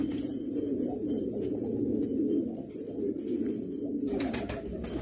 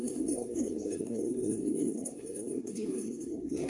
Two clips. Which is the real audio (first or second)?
first